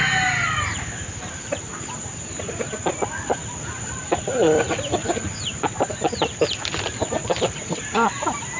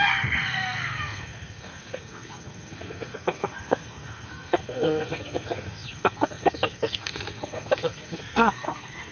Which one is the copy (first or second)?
second